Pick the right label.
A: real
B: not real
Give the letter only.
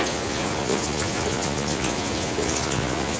B